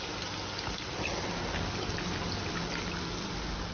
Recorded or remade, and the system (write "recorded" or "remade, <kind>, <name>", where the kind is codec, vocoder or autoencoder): recorded